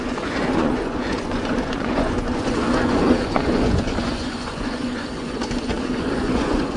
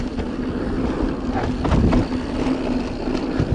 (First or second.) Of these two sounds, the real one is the second